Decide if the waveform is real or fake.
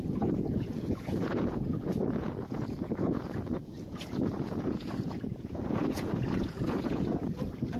fake